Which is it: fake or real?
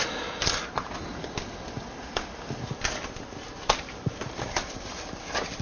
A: fake